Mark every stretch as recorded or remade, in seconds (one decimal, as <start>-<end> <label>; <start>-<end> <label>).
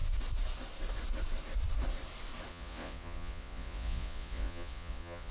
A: 0.0-2.5 recorded; 2.5-5.3 remade